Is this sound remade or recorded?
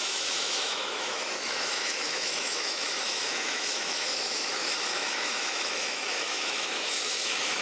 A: remade